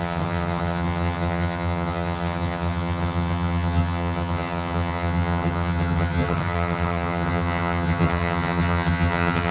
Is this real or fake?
fake